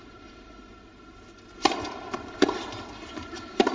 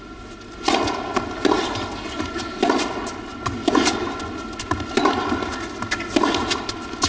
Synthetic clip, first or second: first